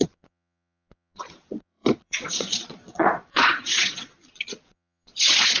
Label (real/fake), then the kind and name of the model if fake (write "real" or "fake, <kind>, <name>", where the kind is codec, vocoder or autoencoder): fake, vocoder, Vocos